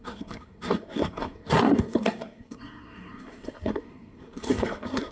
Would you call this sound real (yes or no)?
no